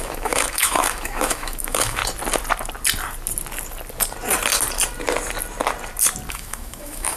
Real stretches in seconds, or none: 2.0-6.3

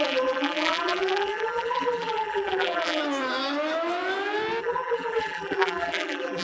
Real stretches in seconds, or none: 3.0-4.6

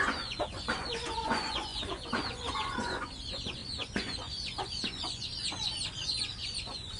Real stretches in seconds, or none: none

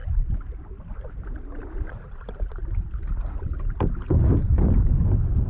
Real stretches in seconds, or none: 0.0-5.5